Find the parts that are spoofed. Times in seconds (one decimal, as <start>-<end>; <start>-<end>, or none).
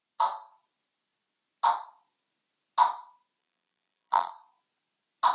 3.4-4.3